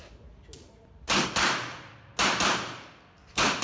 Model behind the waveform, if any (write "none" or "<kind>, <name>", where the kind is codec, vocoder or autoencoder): none